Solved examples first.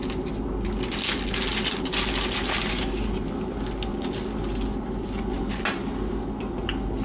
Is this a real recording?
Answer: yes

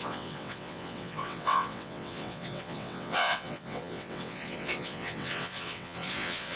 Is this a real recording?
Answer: no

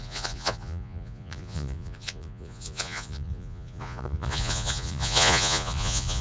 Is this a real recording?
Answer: no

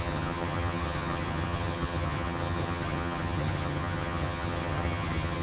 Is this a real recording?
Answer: no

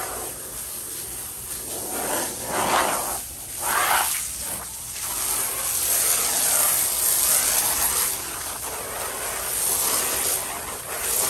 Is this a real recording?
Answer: yes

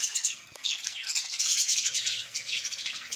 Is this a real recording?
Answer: no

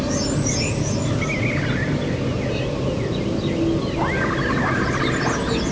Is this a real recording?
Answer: yes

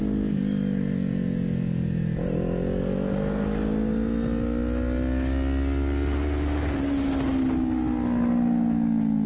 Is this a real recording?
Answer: yes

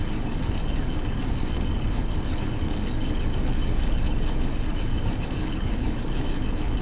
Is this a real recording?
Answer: no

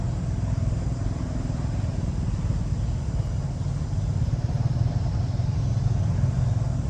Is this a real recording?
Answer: yes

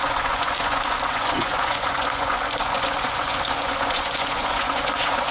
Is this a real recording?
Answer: no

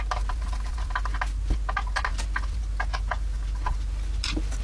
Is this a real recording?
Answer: yes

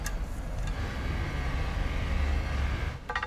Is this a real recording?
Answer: yes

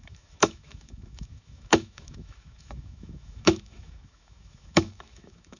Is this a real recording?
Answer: no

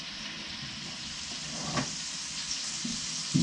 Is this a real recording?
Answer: yes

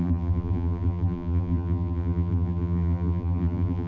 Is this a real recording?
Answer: no